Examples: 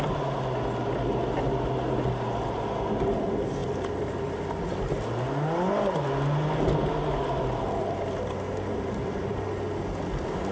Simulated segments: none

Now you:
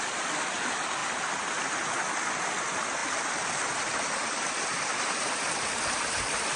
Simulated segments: none

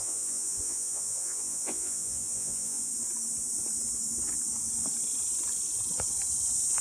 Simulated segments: 0.0-2.9 (vocoder, Vocos)

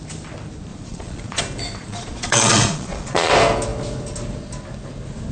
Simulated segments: 0.7-1.4 (vocoder, Vocos); 1.8-3.3

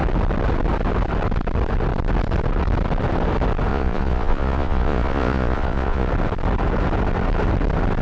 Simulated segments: 3.7-6.1 (vocoder, Vocos)

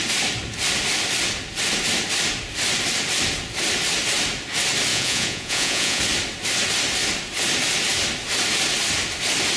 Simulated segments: 4.9-6.0 (vocoder, Vocos)

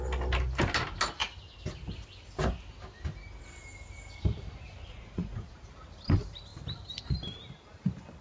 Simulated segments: 4.8-5.7 (vocoder, Vocos)